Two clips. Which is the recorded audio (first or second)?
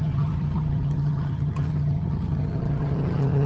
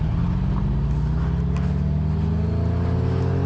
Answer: second